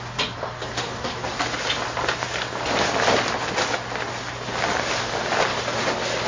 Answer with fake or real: real